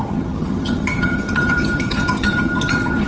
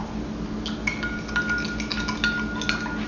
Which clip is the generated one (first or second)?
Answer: first